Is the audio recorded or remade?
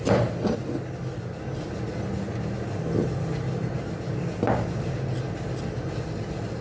recorded